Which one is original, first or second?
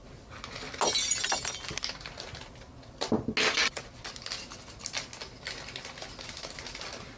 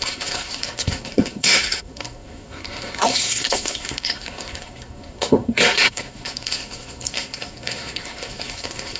first